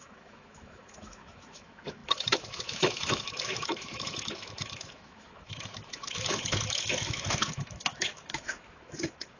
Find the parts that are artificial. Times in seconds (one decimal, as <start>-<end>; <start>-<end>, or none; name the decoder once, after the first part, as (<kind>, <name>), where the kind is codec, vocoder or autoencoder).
0.0-9.4 (autoencoder, DAC-VAE)

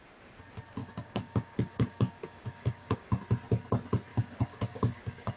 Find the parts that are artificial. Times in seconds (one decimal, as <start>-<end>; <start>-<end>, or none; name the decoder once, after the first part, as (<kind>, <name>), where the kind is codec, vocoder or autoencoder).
0.8-3.2 (codec, DAC); 4.1-5.4

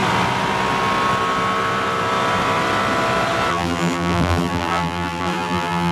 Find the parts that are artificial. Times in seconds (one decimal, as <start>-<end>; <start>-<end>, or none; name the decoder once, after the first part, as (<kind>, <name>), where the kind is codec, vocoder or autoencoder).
3.5-5.9 (vocoder, BigVGAN v2)

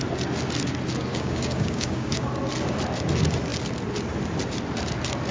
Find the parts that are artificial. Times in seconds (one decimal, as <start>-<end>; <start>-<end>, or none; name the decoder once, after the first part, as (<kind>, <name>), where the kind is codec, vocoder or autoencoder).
1.1-2.3 (codec, DAC)

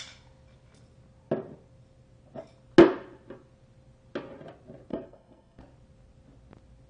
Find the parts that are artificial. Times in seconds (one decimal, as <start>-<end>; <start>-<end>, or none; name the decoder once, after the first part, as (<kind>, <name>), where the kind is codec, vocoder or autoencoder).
4.9-5.6 (codec, SNAC)

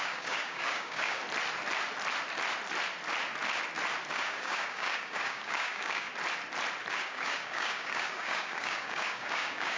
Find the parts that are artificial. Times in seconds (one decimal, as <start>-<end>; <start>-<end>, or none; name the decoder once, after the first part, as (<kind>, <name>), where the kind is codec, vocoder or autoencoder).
0.0-1.2 (codec, DAC); 4.1-6.1; 6.9-9.8

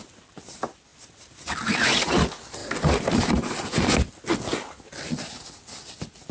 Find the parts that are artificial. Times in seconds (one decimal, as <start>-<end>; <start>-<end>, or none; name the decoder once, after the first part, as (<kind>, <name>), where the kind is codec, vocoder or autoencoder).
none